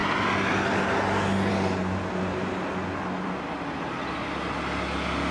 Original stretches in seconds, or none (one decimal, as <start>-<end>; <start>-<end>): 0.0-5.3